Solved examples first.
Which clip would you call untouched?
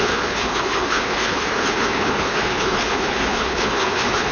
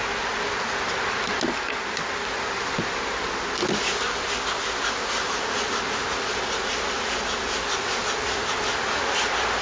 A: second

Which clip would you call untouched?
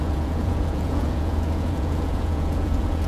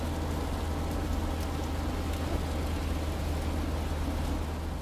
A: second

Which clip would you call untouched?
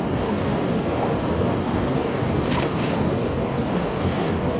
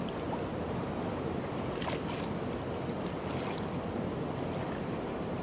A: second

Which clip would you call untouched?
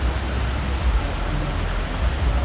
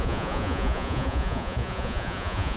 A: first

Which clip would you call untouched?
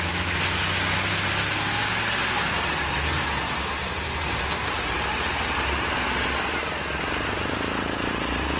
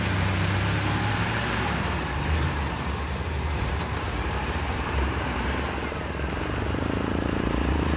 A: first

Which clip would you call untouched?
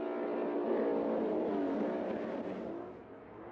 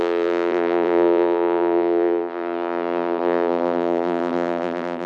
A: first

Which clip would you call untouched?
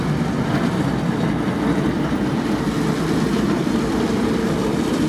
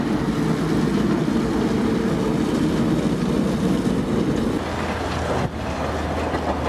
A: second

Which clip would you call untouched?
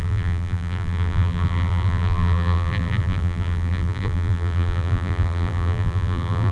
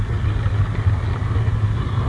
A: second